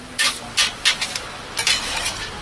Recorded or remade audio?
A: remade